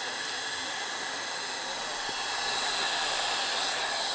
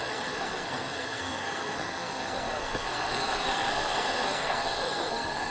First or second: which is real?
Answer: first